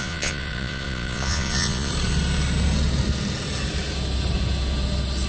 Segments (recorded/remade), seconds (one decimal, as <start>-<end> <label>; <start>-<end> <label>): 0.0-1.9 remade; 1.9-5.3 recorded